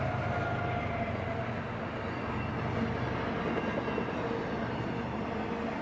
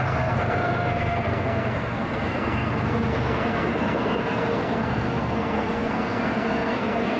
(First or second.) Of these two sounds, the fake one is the second